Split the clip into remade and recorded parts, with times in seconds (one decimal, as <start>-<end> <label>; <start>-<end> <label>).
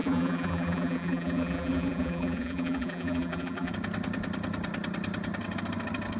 0.0-3.7 remade; 3.7-6.2 recorded